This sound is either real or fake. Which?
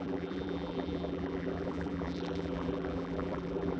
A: fake